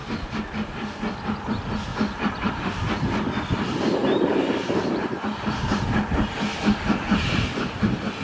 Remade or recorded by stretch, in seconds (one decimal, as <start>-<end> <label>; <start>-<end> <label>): 0.0-1.9 recorded; 1.9-2.6 remade; 2.6-4.0 recorded; 4.0-5.8 remade; 5.8-8.2 recorded